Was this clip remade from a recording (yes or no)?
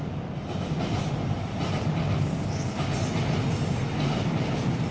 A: no